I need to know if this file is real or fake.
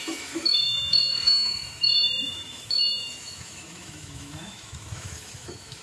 fake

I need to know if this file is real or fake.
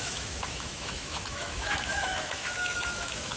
fake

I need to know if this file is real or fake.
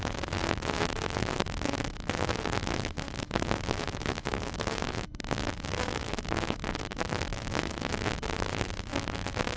fake